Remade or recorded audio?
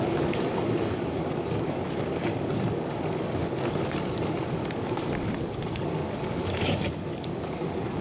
remade